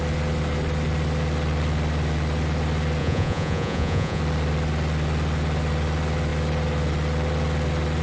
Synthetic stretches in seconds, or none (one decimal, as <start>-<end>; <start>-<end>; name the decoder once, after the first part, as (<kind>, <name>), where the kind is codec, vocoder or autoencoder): 3.0-4.2 (vocoder, Vocos)